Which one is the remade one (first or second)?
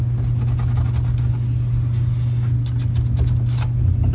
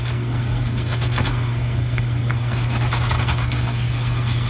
second